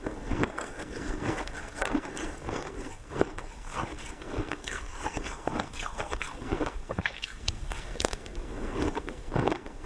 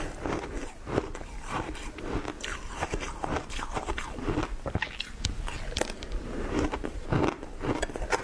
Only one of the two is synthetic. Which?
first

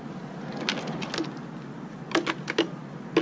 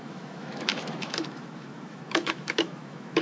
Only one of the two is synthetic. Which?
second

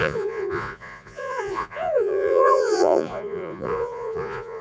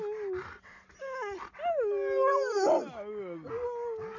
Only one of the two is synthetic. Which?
first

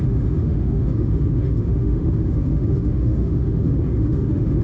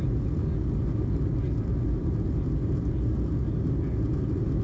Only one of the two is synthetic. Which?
first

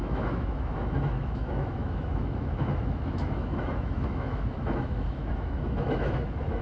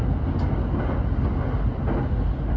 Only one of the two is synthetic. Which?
first